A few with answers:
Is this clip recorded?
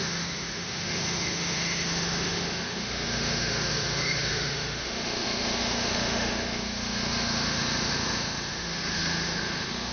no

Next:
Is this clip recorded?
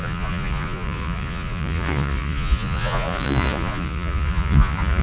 no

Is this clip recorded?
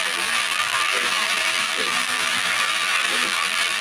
no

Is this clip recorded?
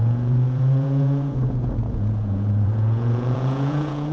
no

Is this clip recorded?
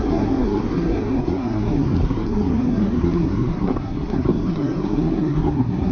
no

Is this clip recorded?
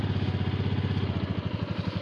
yes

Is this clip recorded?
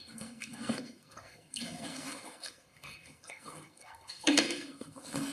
no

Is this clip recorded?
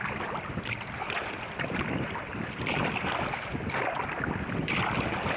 yes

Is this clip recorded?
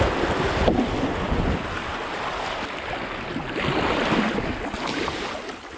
yes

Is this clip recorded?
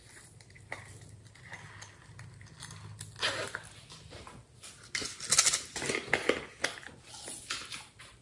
yes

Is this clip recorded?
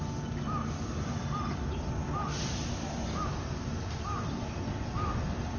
yes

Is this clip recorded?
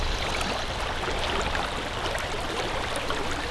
yes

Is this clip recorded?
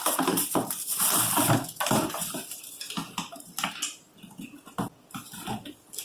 yes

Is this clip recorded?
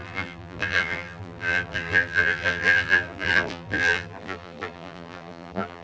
no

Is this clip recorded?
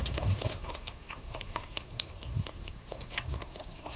no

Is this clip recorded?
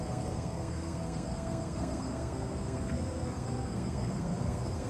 no